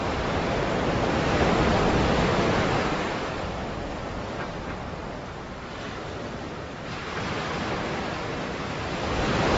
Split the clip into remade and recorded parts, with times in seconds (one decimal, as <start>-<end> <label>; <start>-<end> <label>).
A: 0.0-2.3 remade; 2.3-3.3 recorded; 3.3-3.9 remade; 3.9-4.5 recorded; 4.5-5.0 remade; 5.0-6.9 recorded; 6.9-9.6 remade